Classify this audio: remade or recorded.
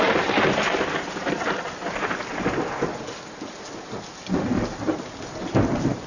recorded